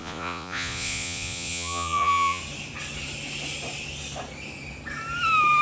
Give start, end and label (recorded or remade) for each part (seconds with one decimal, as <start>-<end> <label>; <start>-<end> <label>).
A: 0.0-2.4 remade; 2.4-5.6 recorded